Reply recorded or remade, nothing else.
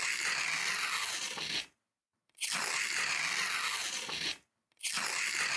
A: recorded